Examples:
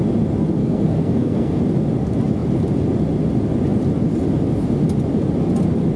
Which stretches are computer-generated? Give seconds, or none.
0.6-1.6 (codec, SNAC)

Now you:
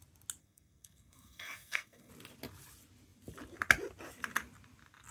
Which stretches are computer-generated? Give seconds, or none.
0.4-2.1 (codec, SNAC)

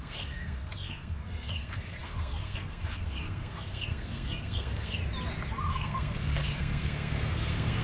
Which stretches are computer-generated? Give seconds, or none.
0.0-5.0 (codec, SNAC); 5.7-7.8

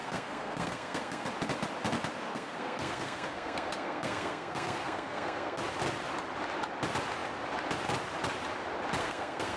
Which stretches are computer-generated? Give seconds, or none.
0.0-1.3 (codec, SNAC); 2.3-5.6; 9.0-9.6

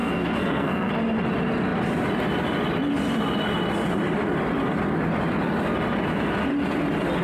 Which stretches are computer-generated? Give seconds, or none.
0.0-0.9 (codec, SNAC)

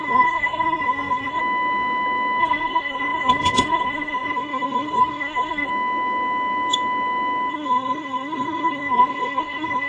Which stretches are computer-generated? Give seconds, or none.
0.0-1.4 (codec, SNAC); 2.4-5.7; 7.5-9.9

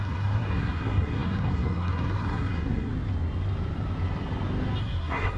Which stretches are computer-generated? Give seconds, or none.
0.0-2.9 (codec, SNAC); 4.8-5.4

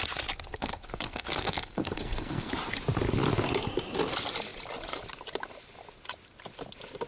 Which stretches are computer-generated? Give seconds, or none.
0.5-2.5 (codec, SNAC)